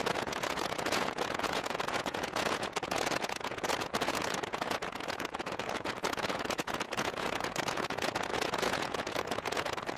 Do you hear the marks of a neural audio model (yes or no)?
yes